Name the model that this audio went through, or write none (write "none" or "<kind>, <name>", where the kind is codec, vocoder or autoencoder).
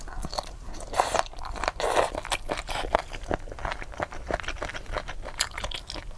none